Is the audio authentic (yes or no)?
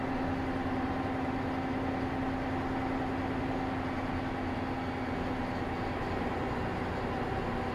yes